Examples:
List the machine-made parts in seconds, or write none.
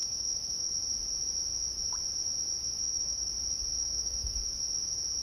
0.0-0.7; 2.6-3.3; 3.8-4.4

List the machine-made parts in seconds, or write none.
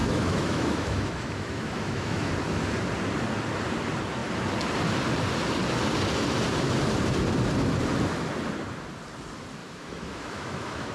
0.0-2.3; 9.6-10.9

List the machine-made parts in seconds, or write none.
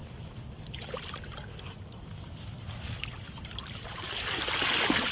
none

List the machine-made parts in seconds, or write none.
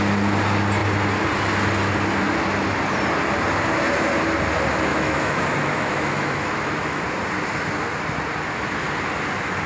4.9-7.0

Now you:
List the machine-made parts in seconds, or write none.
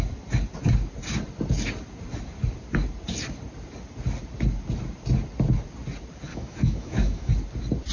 6.3-7.3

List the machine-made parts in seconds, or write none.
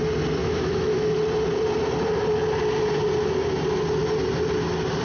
0.4-1.2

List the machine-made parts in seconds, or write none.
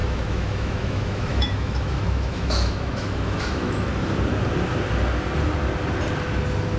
0.0-3.9